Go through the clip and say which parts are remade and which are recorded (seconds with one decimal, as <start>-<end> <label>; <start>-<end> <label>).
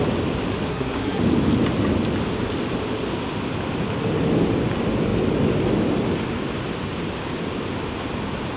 0.0-0.7 recorded; 0.7-1.2 remade; 1.2-8.6 recorded